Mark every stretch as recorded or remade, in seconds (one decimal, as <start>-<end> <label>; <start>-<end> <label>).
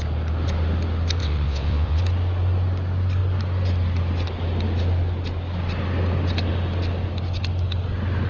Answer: 0.0-1.2 recorded; 1.2-2.0 remade; 2.0-8.3 recorded